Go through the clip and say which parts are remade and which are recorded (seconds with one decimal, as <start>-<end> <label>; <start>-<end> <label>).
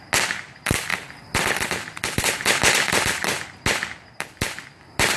0.0-5.2 recorded